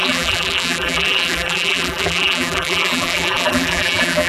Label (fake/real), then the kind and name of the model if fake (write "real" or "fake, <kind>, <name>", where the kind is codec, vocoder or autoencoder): fake, vocoder, BigVGAN v2